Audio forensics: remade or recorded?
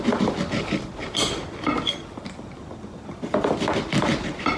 recorded